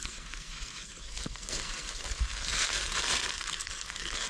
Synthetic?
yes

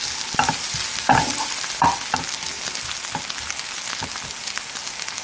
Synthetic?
no